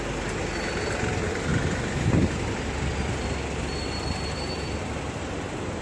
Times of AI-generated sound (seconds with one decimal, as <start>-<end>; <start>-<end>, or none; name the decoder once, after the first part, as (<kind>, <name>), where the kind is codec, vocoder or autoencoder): none